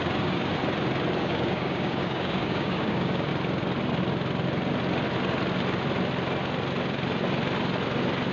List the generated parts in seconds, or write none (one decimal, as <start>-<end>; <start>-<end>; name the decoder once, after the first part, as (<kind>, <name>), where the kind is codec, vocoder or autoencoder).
0.0-0.5 (codec, DAC); 1.2-3.3